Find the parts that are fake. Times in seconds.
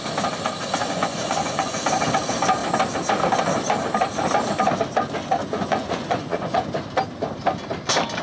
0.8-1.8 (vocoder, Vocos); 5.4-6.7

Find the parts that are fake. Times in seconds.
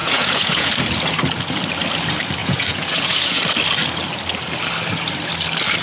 0.0-0.7 (vocoder, Vocos); 2.4-3.4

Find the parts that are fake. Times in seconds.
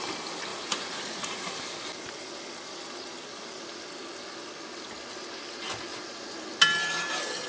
0.5-1.5 (vocoder, Vocos); 5.9-6.4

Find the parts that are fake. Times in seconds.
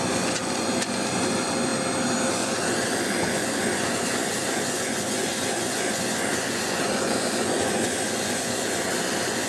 0.0-1.7 (vocoder, Vocos); 2.3-9.5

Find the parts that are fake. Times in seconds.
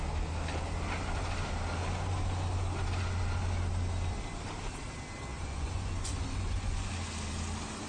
5.3-6.9 (vocoder, Vocos)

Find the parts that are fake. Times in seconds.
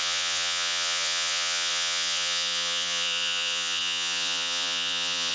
0.0-5.3 (vocoder, Vocos)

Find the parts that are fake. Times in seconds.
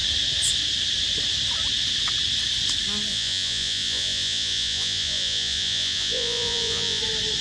3.1-7.0 (vocoder, Vocos)